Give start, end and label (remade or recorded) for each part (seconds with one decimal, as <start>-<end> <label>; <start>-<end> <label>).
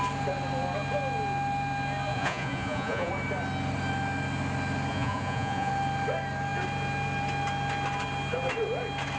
0.0-2.1 recorded; 2.1-3.1 remade; 3.1-4.9 recorded; 4.9-5.7 remade; 5.7-9.2 recorded